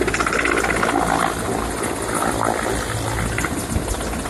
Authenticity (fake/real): real